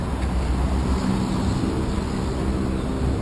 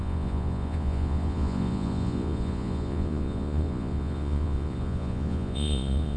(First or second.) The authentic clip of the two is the first